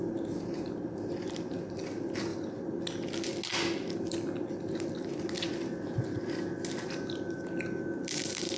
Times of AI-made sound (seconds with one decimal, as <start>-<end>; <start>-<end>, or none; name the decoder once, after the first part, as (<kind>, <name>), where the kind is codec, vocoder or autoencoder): none